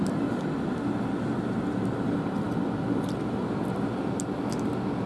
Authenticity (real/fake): real